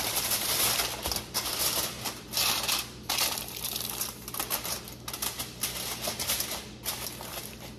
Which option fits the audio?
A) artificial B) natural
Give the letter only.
A